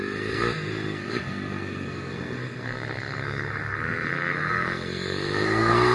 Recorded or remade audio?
remade